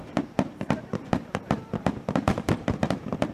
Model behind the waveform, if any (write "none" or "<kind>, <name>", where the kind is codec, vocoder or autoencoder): vocoder, BigVGAN v2